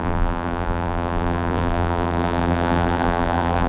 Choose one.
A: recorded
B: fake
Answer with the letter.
B